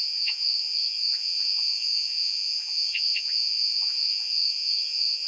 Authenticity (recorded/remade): remade